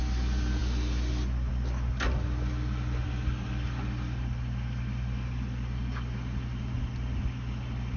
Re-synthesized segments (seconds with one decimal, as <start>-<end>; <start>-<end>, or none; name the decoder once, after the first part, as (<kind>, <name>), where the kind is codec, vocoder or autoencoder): none